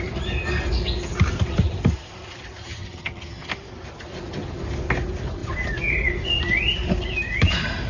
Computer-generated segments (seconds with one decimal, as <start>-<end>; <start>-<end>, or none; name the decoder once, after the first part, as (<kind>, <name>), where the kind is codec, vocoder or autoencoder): 2.6-3.5 (vocoder, HiFi-GAN)